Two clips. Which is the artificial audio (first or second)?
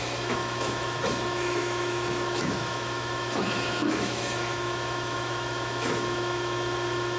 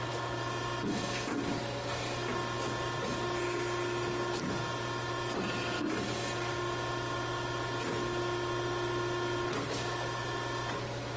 first